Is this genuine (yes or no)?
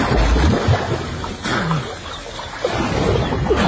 yes